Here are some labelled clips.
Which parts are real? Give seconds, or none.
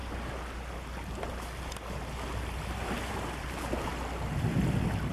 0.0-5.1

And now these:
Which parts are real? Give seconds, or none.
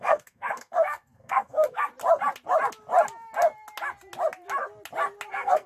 1.9-5.3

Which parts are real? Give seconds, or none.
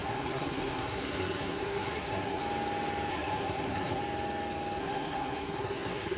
2.4-3.1; 4.0-4.8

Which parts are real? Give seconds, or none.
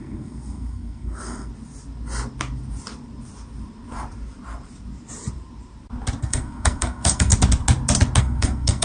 1.5-6.2; 7.3-8.2